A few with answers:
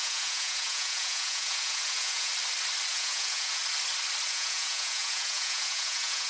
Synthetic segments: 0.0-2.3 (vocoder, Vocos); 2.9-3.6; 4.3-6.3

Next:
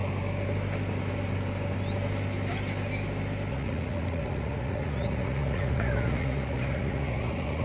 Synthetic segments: 3.5-7.6 (vocoder, Vocos)

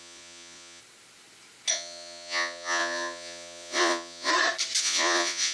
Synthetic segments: 0.0-0.8 (vocoder, Vocos); 1.7-4.3; 4.8-5.5

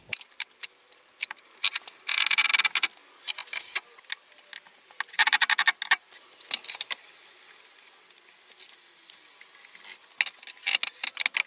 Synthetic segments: none